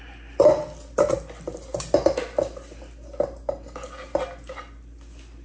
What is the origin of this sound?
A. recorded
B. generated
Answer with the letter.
A